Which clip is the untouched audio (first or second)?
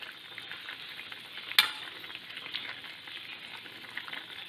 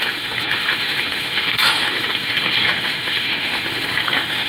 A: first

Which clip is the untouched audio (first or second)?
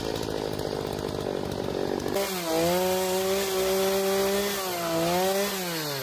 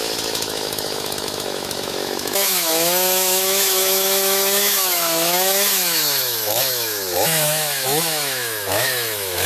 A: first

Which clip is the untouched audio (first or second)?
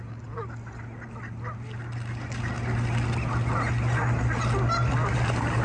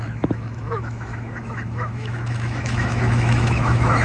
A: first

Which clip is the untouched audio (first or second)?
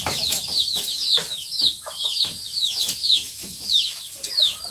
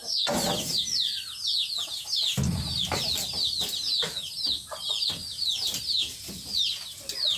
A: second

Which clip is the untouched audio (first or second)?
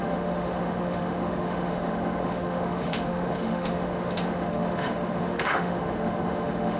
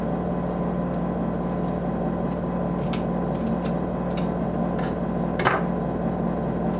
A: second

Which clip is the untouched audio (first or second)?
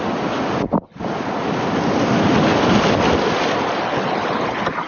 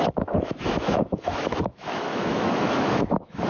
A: first